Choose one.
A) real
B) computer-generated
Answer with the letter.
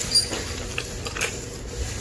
A